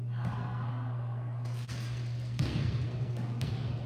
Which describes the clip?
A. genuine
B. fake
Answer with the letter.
B